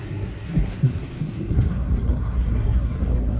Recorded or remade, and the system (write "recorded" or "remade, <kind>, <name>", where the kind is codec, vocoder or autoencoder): remade, codec, SNAC